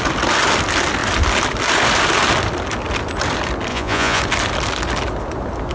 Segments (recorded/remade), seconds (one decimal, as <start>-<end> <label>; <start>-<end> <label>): 0.0-3.7 recorded; 3.7-4.2 remade; 4.2-5.7 recorded